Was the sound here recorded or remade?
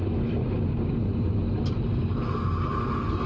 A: recorded